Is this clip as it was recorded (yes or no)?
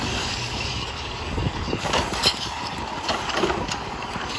no